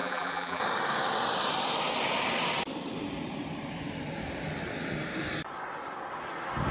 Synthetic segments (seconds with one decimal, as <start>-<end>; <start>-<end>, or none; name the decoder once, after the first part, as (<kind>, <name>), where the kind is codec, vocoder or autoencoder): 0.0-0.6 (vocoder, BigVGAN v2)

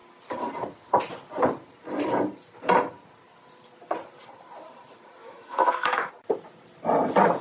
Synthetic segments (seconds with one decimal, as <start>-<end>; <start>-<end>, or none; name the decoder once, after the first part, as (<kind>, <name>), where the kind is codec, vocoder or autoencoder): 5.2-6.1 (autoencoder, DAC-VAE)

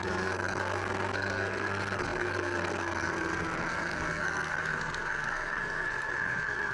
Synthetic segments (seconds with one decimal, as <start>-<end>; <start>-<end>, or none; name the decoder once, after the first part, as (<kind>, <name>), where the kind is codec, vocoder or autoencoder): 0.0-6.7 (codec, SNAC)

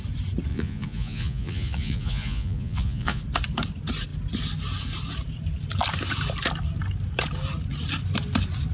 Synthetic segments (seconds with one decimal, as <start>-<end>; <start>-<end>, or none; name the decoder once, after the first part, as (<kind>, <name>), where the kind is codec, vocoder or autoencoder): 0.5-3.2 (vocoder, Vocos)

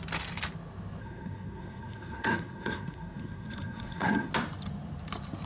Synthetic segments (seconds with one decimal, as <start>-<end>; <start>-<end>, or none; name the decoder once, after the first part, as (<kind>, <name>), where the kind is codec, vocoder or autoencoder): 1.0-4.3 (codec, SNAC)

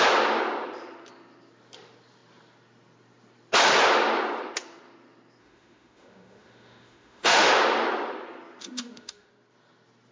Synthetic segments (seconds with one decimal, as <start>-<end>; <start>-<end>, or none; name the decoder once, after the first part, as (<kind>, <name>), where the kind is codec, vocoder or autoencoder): 5.4-7.5 (autoencoder, DAC-VAE); 8.6-9.3

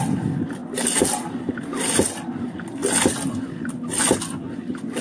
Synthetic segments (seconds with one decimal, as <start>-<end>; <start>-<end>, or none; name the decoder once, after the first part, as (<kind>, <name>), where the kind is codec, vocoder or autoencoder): none